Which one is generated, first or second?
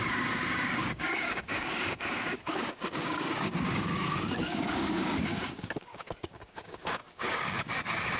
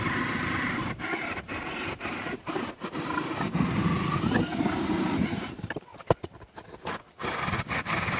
first